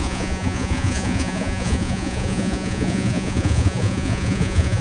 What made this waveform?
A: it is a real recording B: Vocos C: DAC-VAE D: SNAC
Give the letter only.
B